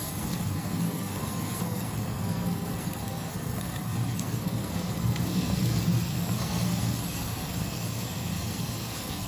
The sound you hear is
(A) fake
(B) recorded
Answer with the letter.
A